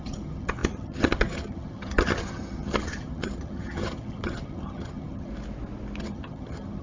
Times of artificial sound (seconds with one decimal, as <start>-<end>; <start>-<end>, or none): 0.0-5.3; 6.0-6.8